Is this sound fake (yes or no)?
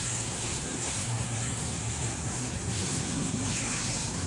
yes